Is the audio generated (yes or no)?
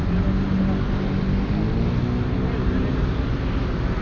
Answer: no